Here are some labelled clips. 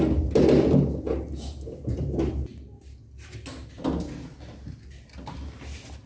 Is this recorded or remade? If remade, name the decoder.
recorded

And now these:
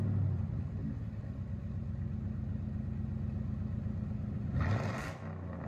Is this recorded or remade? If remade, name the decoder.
recorded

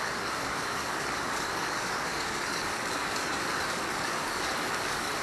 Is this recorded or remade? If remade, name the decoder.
remade, codec, DAC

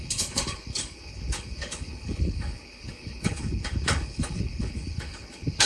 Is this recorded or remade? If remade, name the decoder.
remade, codec, HILCodec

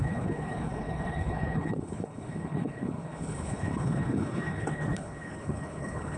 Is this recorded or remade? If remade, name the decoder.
remade, codec, HILCodec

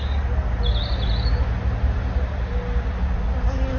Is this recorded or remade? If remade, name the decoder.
recorded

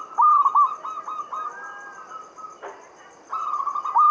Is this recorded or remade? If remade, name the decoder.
recorded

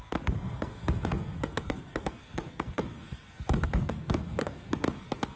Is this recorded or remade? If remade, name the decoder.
remade, codec, SNAC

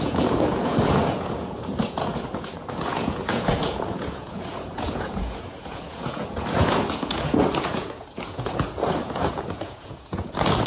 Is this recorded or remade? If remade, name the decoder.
remade, vocoder, Vocos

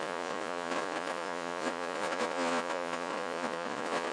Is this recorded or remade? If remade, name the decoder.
remade, vocoder, Vocos